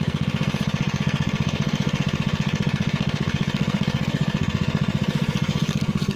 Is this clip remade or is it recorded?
remade